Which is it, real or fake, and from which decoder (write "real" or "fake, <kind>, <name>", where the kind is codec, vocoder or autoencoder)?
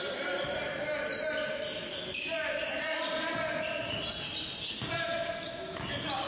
real